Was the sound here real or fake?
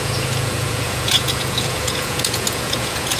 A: fake